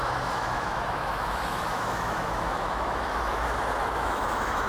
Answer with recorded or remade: remade